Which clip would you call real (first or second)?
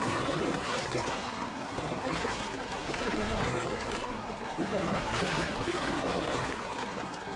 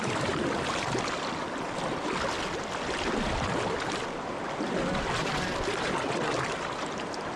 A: second